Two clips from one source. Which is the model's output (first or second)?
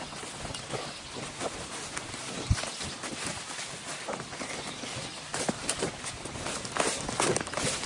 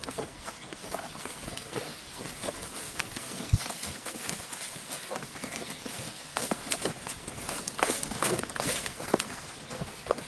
second